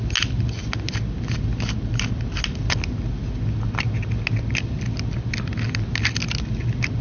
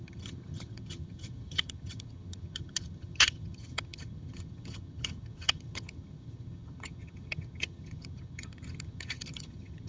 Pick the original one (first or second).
first